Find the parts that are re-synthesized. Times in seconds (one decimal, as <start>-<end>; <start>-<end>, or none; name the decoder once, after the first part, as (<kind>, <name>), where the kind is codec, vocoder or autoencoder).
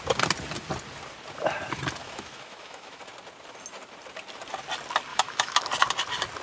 2.0-3.0 (autoencoder, DAC-VAE); 5.1-5.6